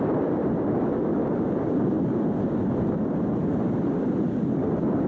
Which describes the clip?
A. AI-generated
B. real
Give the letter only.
B